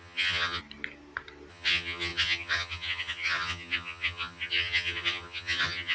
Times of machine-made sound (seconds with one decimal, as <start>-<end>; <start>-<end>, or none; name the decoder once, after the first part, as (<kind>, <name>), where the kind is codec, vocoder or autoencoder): 0.0-0.6 (vocoder, HiFi-GAN); 1.5-5.9